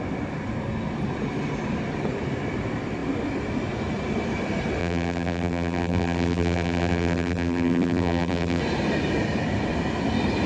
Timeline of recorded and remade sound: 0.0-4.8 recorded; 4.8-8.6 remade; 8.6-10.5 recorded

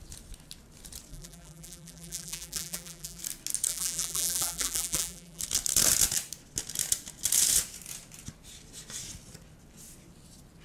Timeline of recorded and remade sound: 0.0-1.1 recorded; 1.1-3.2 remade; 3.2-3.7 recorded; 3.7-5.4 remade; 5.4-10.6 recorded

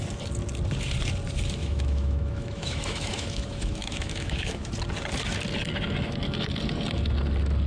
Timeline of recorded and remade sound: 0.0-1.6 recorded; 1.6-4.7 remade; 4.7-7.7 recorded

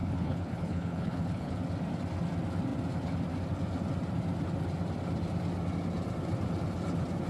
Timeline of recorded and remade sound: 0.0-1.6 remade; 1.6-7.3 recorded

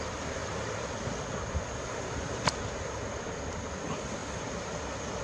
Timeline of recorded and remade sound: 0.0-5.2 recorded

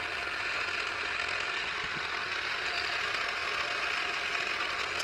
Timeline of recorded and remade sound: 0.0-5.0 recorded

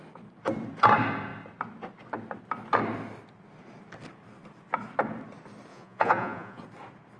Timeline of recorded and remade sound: 0.0-5.7 recorded; 5.7-6.6 remade; 6.6-7.2 recorded

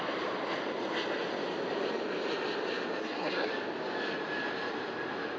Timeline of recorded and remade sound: 0.0-3.0 recorded; 3.0-3.5 remade; 3.5-5.4 recorded